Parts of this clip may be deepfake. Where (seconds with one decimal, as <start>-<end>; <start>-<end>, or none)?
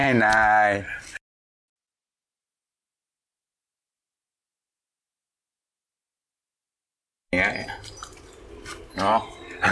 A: none